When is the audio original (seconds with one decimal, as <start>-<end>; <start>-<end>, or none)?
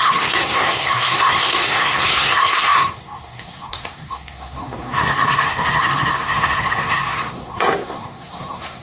none